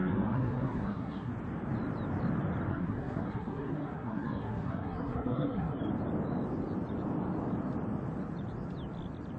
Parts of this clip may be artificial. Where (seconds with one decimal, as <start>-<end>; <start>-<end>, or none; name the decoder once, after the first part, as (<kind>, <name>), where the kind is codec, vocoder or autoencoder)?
0.0-1.3 (codec, SNAC); 2.7-5.8